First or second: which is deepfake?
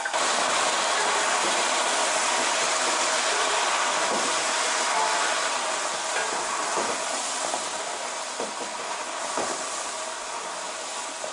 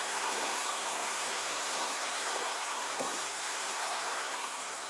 second